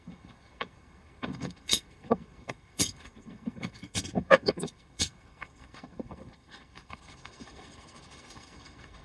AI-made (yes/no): yes